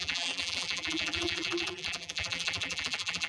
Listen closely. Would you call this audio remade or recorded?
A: remade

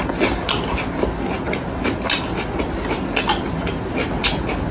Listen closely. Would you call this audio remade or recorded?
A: recorded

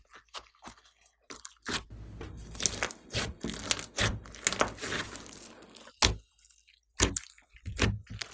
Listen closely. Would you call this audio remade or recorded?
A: recorded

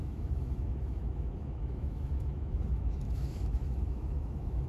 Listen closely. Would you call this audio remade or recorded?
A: remade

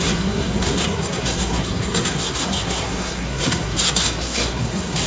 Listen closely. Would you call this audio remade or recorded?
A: remade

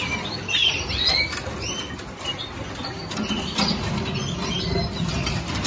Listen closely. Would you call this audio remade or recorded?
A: recorded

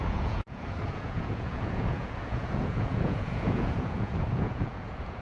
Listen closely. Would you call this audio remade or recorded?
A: remade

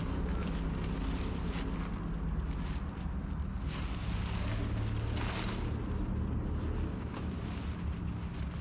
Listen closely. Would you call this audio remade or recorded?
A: recorded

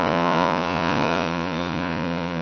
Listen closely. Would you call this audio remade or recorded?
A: remade